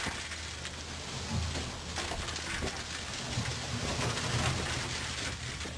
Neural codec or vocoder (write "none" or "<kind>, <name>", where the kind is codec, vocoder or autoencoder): none